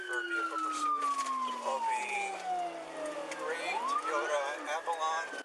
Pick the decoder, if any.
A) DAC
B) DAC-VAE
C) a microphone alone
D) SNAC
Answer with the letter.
C